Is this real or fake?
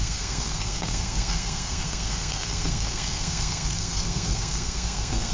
fake